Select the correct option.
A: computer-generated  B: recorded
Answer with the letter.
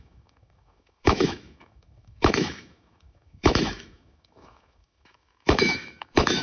A